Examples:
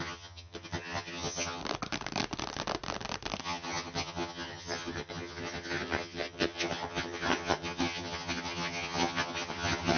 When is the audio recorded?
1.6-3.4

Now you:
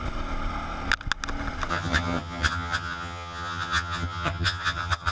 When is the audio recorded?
0.0-1.7

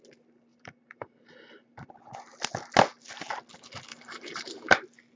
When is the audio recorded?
0.0-0.5; 1.9-3.9; 4.7-5.2

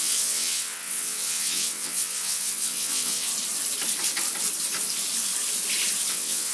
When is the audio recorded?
3.3-6.1

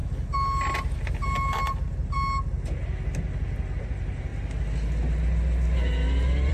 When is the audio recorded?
0.0-3.8; 4.3-6.5